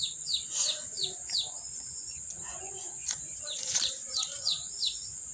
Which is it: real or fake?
fake